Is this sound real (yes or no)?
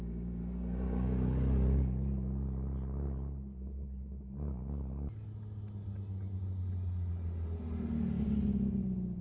yes